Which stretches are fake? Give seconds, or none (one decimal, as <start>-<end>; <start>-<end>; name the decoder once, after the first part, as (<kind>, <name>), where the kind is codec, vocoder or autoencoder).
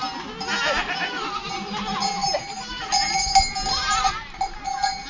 none